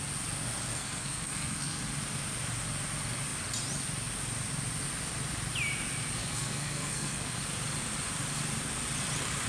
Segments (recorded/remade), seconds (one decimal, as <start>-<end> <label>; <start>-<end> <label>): 0.0-0.7 recorded; 0.7-1.8 remade; 1.8-6.2 recorded; 6.2-7.4 remade; 7.4-9.5 recorded